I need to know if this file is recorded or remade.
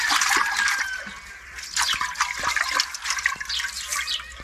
recorded